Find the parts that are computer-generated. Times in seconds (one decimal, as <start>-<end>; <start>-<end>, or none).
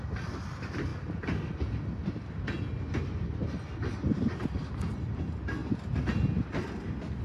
none